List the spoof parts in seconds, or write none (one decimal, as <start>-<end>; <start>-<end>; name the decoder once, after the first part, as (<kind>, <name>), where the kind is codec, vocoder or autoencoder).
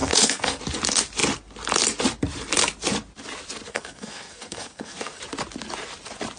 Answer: 0.0-0.6 (codec, SNAC); 3.7-5.2